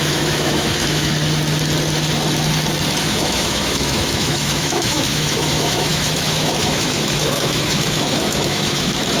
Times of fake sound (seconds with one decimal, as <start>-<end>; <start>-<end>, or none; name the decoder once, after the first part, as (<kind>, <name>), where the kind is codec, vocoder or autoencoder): 0.0-1.1 (autoencoder, DAC-VAE); 3.0-9.2